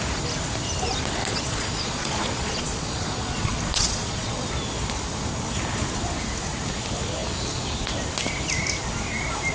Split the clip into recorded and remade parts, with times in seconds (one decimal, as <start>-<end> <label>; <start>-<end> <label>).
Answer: 0.0-1.2 recorded; 1.2-4.5 remade; 4.5-9.5 recorded